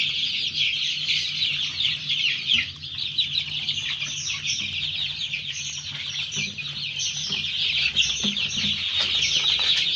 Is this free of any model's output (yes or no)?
yes